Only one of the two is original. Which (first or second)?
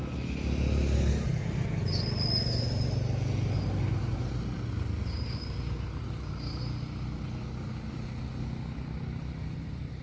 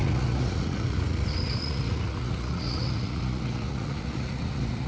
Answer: first